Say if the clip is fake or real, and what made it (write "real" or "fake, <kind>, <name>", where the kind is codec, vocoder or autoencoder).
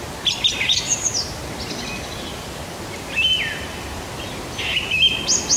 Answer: real